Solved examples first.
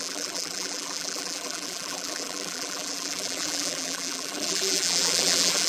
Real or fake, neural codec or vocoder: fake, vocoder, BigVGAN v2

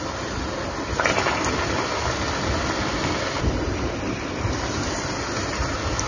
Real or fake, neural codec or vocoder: real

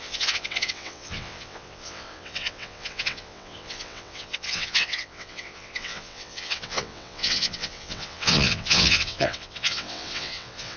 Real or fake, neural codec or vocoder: fake, vocoder, WaveNeXt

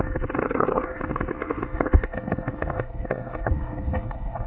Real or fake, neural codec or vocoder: fake, codec, SNAC